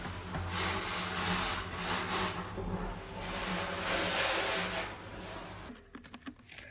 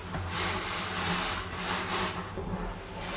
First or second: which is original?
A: first